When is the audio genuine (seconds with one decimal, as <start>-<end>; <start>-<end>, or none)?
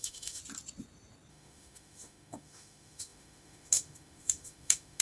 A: 0.4-1.3